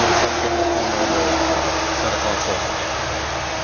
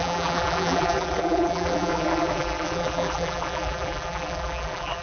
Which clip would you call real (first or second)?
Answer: first